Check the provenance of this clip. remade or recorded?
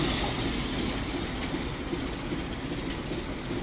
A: recorded